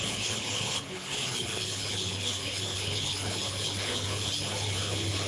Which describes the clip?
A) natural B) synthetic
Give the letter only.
B